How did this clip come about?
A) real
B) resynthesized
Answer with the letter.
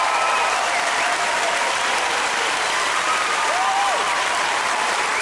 B